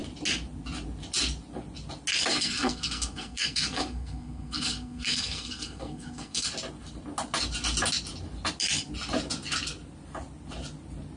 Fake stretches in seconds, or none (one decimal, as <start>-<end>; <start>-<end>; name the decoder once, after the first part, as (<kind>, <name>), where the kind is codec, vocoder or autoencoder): 2.3-6.5 (codec, SNAC)

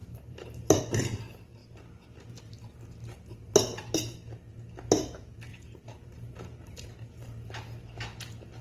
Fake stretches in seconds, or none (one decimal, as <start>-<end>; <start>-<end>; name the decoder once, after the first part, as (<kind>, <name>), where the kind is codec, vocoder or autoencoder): 0.0-0.8 (vocoder, BigVGAN v2); 5.5-6.9